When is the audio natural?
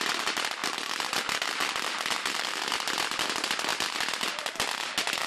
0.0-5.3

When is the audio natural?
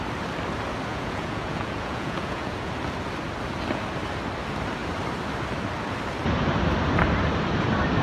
0.0-0.9; 2.7-8.0